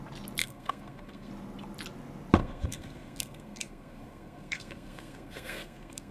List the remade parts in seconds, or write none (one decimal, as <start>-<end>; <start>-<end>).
0.4-1.3; 2.4-6.1

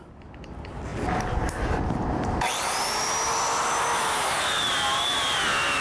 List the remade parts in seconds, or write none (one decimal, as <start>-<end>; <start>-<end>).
0.0-0.9; 1.8-5.8

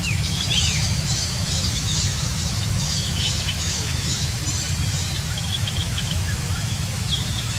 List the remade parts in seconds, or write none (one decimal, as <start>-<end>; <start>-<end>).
0.0-4.4; 5.3-7.6

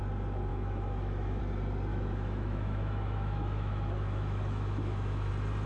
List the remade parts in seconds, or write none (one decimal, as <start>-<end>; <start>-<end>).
0.5-1.4; 1.9-5.3